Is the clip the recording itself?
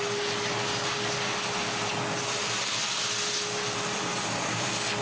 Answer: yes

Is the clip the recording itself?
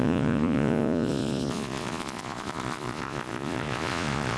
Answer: no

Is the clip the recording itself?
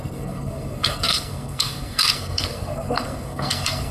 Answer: no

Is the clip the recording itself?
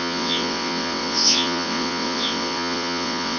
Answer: no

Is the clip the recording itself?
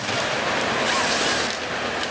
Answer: yes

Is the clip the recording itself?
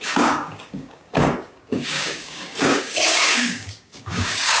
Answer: no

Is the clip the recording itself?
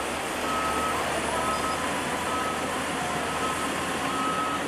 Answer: yes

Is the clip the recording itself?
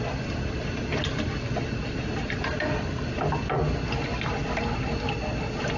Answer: yes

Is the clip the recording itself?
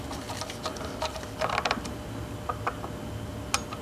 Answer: yes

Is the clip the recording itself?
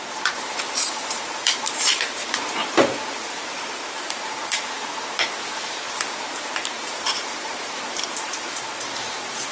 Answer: no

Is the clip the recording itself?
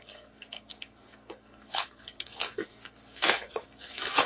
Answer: no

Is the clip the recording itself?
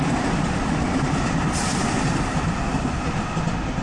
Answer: yes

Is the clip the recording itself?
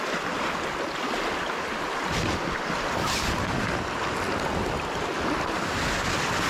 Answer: yes